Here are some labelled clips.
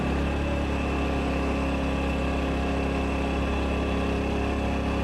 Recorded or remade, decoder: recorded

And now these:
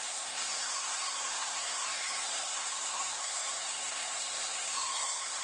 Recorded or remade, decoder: remade, codec, SNAC